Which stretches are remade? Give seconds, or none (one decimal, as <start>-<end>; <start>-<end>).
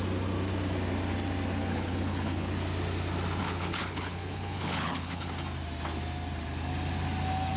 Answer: 1.7-2.5; 3.4-5.3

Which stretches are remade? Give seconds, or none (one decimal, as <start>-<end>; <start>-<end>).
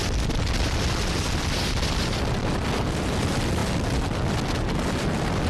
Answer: none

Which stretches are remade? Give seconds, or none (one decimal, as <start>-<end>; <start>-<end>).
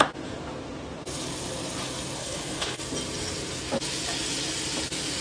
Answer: 2.2-2.8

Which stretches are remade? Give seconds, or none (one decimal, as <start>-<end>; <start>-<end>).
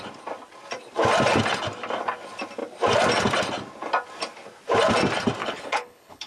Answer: 5.4-6.3